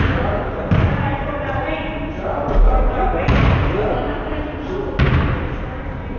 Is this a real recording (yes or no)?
yes